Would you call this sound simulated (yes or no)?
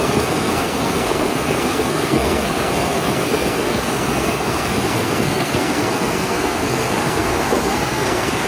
yes